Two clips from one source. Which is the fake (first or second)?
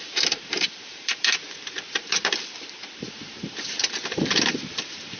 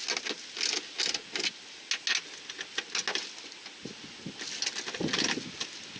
first